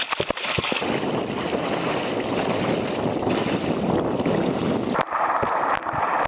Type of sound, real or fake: real